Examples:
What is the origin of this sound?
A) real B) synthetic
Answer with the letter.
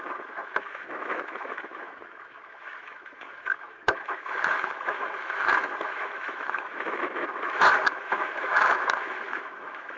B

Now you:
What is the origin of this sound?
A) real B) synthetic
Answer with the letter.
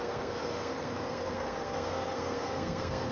B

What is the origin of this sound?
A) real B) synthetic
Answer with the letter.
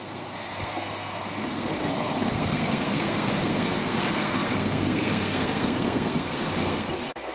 B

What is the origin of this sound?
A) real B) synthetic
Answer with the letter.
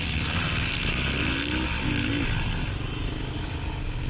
A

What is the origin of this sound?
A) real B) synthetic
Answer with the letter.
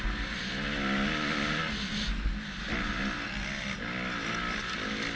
A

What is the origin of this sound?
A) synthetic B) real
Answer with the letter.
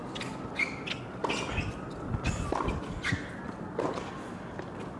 B